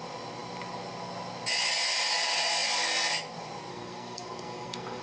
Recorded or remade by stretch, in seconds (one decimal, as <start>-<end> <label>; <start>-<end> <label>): 0.0-3.7 recorded; 3.7-5.0 remade